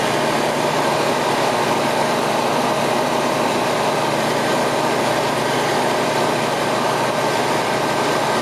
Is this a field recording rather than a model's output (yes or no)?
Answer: yes